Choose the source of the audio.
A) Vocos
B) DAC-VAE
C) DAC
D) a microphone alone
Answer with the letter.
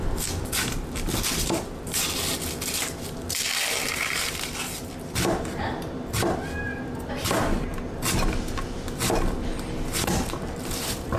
D